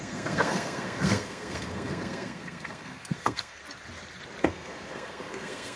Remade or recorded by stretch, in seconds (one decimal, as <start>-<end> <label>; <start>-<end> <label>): 0.0-3.6 remade; 3.6-4.4 recorded; 4.4-5.8 remade